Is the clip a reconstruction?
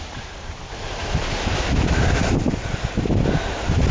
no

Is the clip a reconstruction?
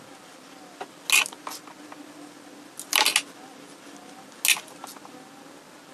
no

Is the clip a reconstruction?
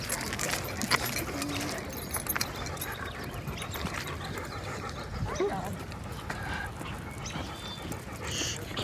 no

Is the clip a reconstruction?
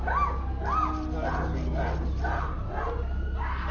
no